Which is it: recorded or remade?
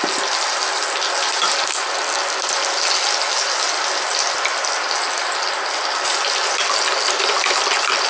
recorded